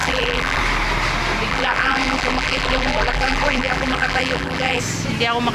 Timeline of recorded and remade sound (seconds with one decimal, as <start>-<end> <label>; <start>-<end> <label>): 0.0-0.6 remade; 0.6-1.5 recorded; 1.5-4.8 remade; 4.8-5.5 recorded